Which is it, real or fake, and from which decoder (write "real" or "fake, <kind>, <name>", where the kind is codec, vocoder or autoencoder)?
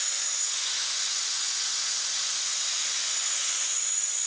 fake, vocoder, Vocos